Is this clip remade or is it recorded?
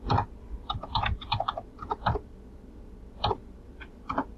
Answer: remade